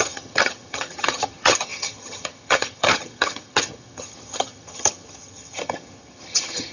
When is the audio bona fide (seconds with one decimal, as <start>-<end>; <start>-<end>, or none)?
none

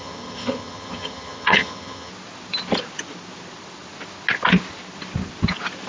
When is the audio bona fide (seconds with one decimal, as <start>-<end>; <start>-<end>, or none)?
2.1-5.9

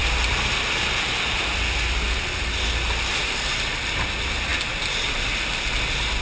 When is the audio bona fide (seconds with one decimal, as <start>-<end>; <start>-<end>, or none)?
0.0-6.2

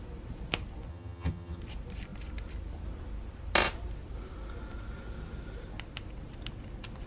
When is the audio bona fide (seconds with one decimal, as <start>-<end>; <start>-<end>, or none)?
0.0-0.9; 1.6-7.1

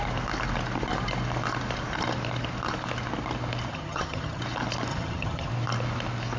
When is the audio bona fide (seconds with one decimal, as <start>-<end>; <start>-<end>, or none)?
0.0-3.7; 4.4-4.9; 5.5-6.4

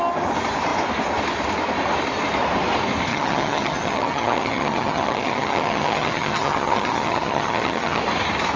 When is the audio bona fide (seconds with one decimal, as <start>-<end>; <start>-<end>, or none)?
0.0-3.1; 8.0-8.6